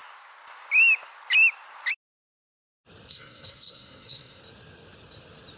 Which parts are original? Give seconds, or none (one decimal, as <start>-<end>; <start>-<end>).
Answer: 0.0-3.1; 4.4-5.6